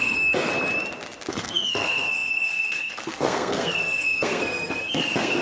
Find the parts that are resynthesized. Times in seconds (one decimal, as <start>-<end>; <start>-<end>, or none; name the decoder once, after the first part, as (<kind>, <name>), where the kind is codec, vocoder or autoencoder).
0.0-0.5 (codec, SNAC); 1.3-5.4